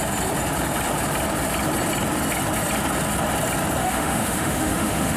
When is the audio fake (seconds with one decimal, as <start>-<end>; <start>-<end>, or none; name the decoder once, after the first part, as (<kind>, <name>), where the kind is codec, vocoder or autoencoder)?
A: 3.8-5.2 (autoencoder, DAC-VAE)

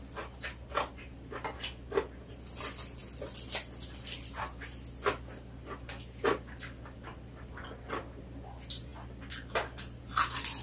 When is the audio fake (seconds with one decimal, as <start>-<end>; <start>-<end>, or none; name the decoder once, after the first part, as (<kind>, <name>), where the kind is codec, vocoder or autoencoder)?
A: none

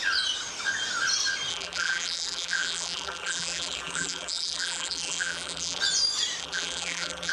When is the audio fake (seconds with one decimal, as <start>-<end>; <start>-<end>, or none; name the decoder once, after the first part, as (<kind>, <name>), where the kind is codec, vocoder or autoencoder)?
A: 1.5-5.8 (vocoder, BigVGAN v2); 6.4-7.3

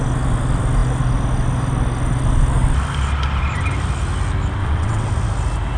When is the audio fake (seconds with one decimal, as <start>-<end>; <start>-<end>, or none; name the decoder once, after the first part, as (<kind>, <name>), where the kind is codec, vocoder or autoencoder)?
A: 4.6-5.1 (vocoder, WaveNeXt)

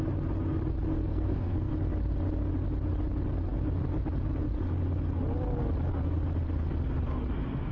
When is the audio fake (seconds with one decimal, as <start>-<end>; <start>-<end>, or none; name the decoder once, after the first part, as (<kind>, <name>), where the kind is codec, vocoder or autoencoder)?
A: 1.1-1.7 (codec, SNAC)